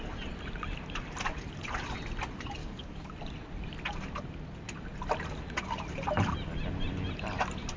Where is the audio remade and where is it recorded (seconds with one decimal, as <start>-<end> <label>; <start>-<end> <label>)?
0.0-2.6 recorded; 2.6-3.1 remade; 3.1-7.8 recorded